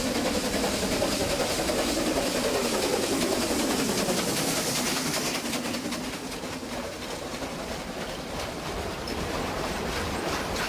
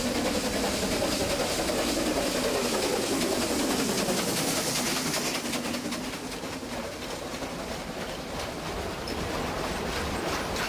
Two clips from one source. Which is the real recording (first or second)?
second